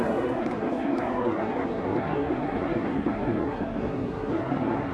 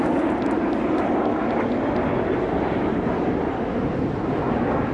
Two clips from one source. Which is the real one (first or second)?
second